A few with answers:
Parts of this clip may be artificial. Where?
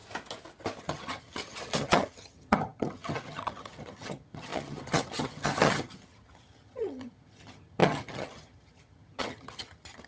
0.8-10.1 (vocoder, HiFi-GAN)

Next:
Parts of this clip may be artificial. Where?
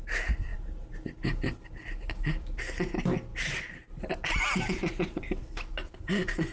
none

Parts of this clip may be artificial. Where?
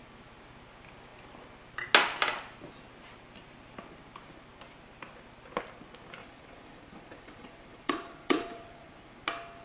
6.2-9.2 (vocoder, Vocos)